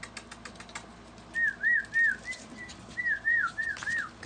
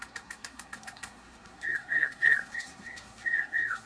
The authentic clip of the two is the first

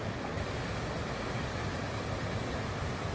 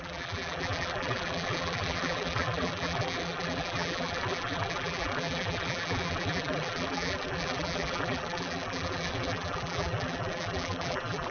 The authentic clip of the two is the first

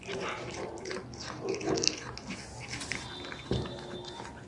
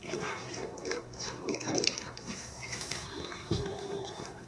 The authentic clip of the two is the first